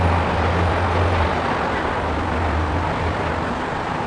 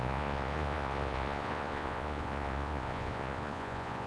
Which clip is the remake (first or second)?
second